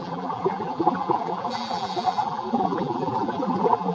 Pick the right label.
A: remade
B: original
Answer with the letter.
A